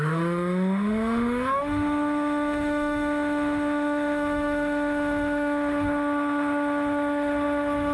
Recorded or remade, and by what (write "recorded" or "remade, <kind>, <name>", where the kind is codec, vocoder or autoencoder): remade, autoencoder, DAC-VAE